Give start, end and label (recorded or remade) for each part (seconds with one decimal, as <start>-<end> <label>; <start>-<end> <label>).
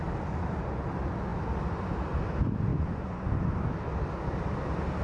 0.0-2.7 recorded; 2.7-3.3 remade; 3.3-5.0 recorded